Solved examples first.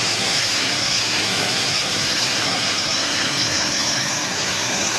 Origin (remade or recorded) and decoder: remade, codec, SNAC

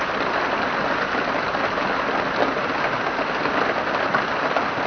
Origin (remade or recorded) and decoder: recorded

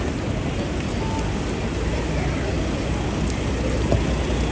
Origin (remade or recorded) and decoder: recorded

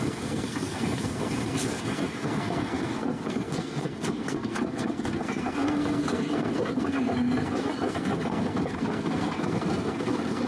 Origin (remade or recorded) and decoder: remade, codec, SNAC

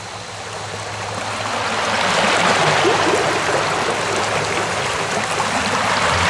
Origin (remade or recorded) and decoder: recorded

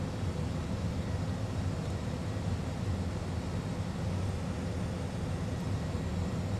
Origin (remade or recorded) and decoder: recorded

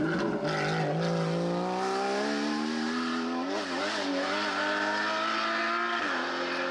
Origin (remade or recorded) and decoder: recorded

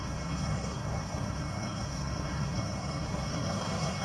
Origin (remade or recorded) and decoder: remade, codec, SNAC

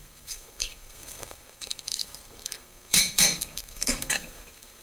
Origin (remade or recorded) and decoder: remade, codec, SNAC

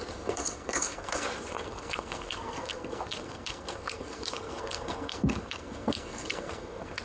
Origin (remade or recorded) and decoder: remade, codec, SNAC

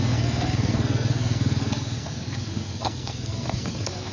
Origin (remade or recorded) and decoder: remade, codec, SNAC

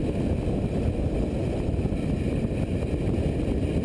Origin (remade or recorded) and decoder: recorded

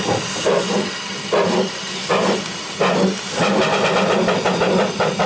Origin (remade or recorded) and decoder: recorded